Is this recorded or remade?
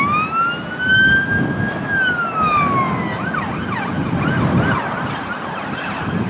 recorded